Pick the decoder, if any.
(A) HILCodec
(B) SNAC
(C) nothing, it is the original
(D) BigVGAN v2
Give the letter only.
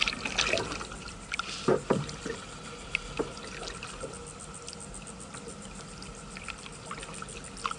C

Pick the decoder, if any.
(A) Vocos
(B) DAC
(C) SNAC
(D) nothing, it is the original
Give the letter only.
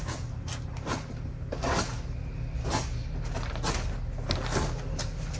D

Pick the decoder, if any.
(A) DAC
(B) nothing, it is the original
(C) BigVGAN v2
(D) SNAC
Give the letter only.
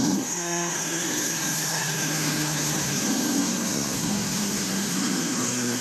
D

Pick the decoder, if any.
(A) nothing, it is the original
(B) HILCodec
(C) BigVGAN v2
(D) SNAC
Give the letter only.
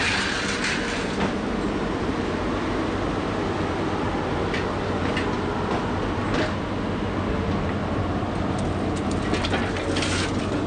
A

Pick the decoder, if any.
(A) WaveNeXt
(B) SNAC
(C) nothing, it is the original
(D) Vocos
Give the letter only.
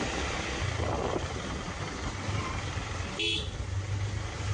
C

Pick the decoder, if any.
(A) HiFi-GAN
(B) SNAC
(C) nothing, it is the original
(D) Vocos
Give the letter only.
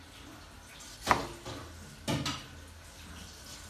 C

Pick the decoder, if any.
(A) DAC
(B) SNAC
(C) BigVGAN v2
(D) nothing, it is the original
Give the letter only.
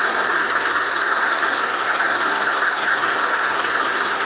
B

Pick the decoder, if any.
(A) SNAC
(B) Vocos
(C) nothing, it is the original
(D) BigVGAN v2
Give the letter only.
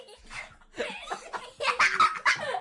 C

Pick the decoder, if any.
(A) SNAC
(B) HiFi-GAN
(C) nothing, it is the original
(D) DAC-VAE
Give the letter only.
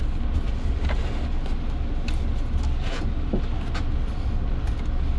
C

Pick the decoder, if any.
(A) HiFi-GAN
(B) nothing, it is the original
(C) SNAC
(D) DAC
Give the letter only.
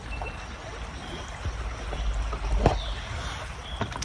B